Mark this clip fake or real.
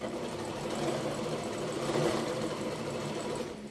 fake